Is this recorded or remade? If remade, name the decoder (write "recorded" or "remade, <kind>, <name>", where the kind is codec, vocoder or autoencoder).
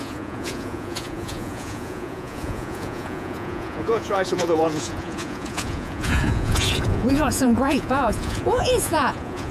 remade, vocoder, Vocos